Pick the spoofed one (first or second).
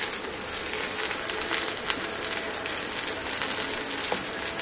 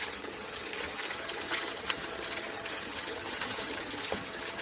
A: second